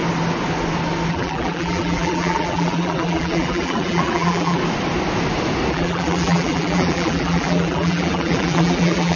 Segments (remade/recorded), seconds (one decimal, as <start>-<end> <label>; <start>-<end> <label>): 0.0-1.1 recorded; 1.1-4.6 remade; 4.6-5.7 recorded; 5.7-9.2 remade